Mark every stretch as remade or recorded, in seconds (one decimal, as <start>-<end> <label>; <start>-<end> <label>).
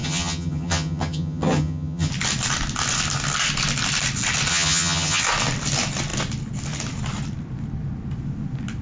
0.0-2.1 remade; 2.1-4.5 recorded; 4.5-5.2 remade; 5.2-8.8 recorded